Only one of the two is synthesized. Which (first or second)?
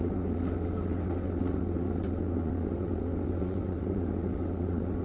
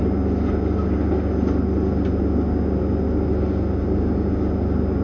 first